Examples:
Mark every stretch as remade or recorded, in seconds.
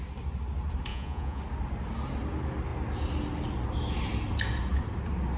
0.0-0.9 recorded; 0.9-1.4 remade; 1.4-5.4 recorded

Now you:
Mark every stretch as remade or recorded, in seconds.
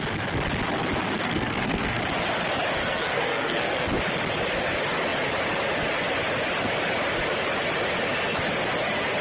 0.0-1.2 recorded; 1.2-2.0 remade; 2.0-2.8 recorded; 2.8-3.9 remade; 3.9-9.2 recorded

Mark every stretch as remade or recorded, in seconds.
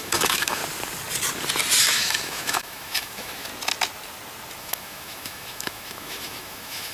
0.0-0.6 remade; 0.6-1.8 recorded; 1.8-3.5 remade; 3.5-4.6 recorded; 4.6-6.9 remade